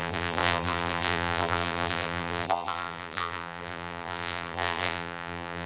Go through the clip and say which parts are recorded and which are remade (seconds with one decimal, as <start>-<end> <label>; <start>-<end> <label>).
0.0-5.7 remade